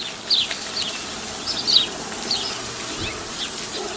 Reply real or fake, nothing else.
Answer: real